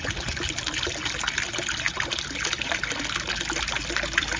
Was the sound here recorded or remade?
recorded